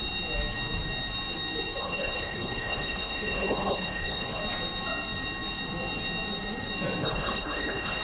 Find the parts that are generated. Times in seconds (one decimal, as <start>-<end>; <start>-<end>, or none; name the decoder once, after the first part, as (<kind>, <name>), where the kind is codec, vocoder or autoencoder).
1.8-4.4 (codec, HILCodec); 7.0-8.0